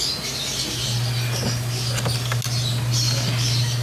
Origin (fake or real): real